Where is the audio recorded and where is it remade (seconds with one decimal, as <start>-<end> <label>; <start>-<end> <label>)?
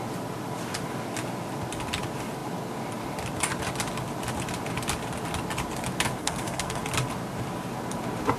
0.0-6.2 recorded; 6.2-6.8 remade; 6.8-8.4 recorded